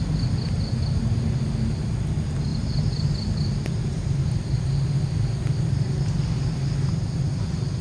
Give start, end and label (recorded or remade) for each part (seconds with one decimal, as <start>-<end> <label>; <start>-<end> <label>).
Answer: 0.0-7.8 recorded